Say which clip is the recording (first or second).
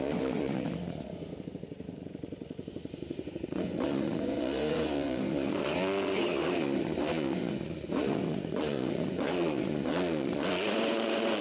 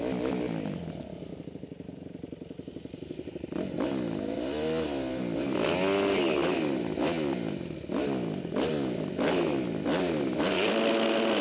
second